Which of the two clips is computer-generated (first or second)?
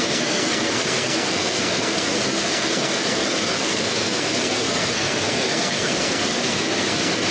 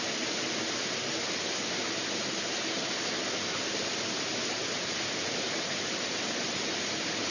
first